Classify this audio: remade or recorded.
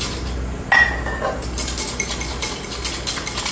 recorded